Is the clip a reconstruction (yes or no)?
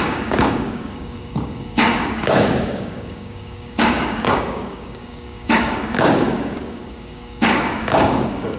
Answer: yes